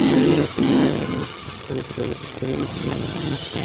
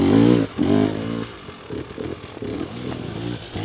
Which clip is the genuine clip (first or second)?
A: second